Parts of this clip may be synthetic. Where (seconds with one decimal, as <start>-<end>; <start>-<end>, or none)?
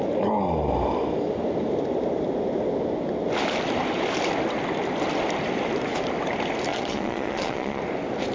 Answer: 6.7-7.8